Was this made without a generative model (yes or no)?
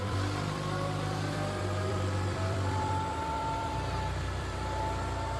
no